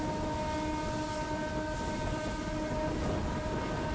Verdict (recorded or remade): recorded